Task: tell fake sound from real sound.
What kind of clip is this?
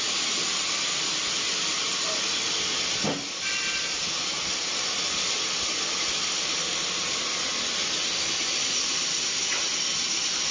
real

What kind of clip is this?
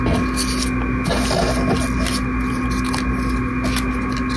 real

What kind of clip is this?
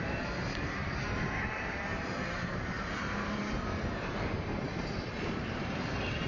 fake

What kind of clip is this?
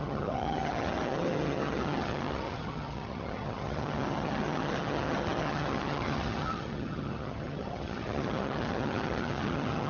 fake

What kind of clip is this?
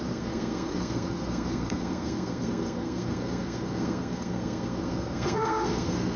fake